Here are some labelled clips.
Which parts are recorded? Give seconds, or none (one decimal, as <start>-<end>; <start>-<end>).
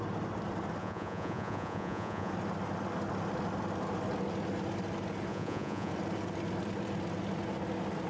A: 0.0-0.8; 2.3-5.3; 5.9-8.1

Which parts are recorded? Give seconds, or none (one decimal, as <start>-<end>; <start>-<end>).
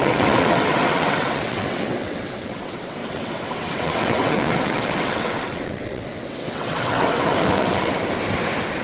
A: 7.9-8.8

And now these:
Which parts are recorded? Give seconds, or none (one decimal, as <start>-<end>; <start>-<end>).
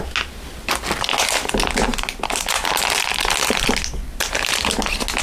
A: 0.0-5.2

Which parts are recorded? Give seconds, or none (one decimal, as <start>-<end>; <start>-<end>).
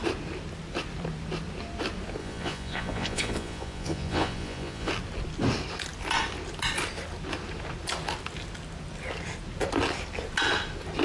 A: 0.0-2.2; 4.9-11.0